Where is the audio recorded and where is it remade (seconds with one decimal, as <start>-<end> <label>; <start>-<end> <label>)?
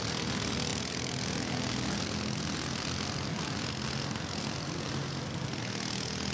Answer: 0.0-6.3 recorded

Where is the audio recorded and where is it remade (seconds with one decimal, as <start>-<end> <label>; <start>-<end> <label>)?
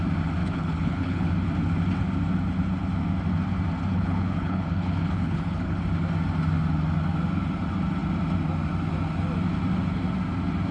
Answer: 0.0-0.4 recorded; 0.4-1.3 remade; 1.3-3.9 recorded; 3.9-5.8 remade; 5.8-10.7 recorded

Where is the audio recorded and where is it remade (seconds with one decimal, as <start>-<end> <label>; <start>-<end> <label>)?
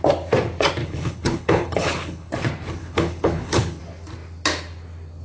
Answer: 0.0-0.8 recorded; 0.8-2.3 remade; 2.3-2.8 recorded; 2.8-3.8 remade; 3.8-5.2 recorded